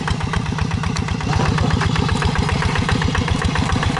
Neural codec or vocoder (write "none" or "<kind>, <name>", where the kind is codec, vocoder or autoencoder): vocoder, BigVGAN v2